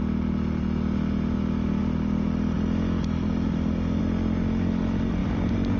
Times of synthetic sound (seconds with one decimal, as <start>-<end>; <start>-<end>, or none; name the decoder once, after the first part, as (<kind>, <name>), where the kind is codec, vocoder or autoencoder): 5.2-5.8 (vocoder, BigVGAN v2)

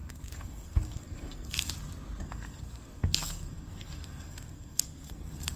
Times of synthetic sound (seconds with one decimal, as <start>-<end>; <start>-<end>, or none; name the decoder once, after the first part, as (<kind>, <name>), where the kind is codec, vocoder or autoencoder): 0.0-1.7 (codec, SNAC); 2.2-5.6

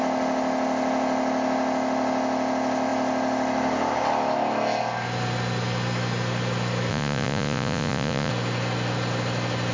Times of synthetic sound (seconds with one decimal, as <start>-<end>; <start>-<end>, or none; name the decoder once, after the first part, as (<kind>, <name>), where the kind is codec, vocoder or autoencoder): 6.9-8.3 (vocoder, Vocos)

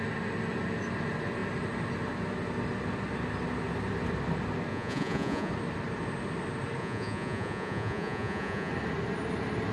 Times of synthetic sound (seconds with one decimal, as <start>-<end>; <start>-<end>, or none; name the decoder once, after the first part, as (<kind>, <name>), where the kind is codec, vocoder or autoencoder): 4.7-5.5 (vocoder, Vocos); 6.8-8.7